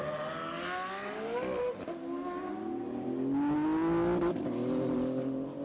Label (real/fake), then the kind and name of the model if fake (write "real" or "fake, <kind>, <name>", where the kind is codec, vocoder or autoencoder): real